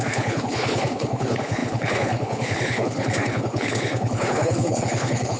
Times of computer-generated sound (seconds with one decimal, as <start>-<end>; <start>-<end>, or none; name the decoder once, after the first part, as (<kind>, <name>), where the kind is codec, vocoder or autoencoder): 0.0-5.4 (codec, HILCodec)